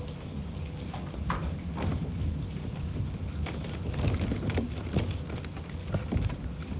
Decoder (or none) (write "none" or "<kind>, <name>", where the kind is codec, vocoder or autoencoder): none